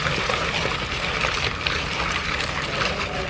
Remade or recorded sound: recorded